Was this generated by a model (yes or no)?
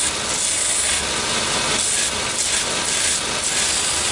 no